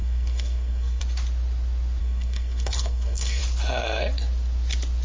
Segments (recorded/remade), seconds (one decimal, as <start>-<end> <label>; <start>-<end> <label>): 0.0-1.0 remade; 1.0-2.0 recorded; 2.0-3.4 remade; 3.4-5.0 recorded